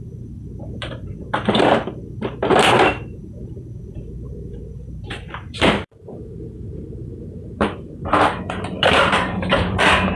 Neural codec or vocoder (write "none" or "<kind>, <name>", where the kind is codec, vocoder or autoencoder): vocoder, BigVGAN v2